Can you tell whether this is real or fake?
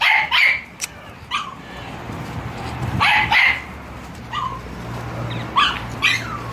fake